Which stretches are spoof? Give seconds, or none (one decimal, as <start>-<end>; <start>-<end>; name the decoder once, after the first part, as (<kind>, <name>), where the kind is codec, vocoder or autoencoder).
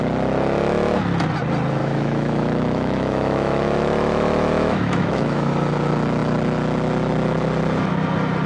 1.8-5.5 (autoencoder, DAC-VAE)